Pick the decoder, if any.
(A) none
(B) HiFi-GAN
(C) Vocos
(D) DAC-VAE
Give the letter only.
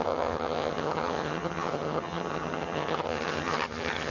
B